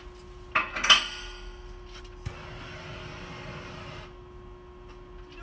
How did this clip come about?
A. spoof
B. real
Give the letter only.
B